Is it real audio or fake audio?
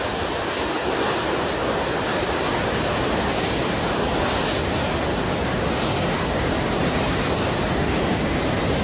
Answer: real